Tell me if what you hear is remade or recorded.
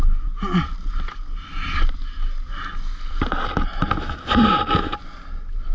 recorded